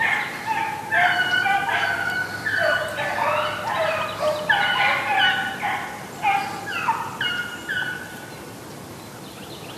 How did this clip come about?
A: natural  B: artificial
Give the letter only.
A